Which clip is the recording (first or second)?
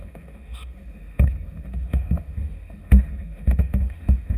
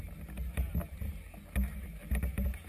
second